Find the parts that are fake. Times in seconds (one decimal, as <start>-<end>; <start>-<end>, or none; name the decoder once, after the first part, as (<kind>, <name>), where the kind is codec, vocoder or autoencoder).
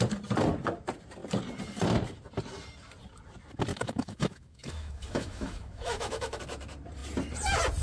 3.7-6.4 (autoencoder, DAC-VAE)